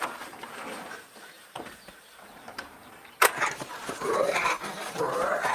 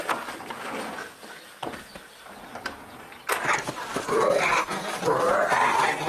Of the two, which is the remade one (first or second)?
first